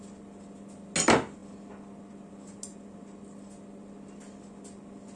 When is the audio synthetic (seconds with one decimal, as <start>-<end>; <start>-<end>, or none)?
none